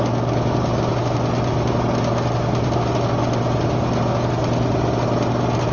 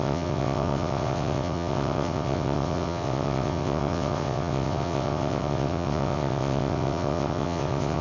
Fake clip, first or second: second